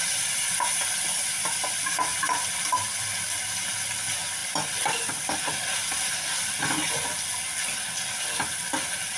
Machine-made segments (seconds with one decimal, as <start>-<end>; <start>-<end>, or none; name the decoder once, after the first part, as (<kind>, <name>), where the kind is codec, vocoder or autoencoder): 2.1-2.7 (vocoder, BigVGAN v2); 4.4-6.6